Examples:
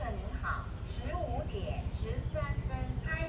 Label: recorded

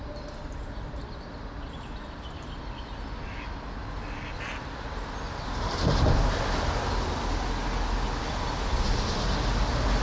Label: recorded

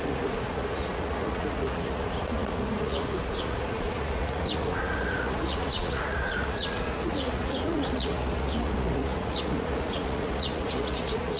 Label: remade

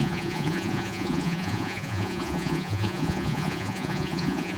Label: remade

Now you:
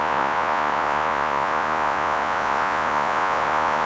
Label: remade